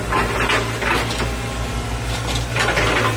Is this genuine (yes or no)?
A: yes